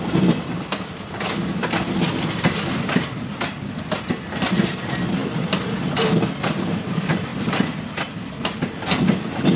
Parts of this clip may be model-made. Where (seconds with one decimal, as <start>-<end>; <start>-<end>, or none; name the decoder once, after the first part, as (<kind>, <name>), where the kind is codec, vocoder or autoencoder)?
5.2-6.3 (vocoder, BigVGAN v2); 7.3-7.8